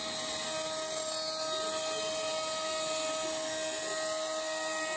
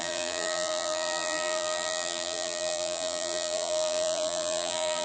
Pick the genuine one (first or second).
first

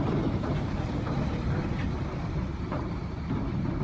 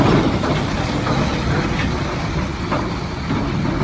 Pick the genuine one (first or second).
second